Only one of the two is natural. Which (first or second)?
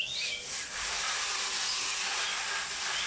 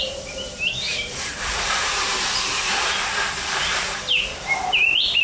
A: first